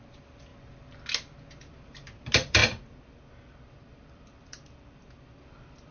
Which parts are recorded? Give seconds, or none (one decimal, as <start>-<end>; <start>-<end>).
0.5-1.6